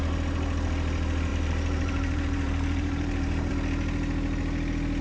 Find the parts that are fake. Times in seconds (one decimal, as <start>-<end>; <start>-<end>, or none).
1.3-3.5